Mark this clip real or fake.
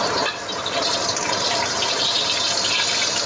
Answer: real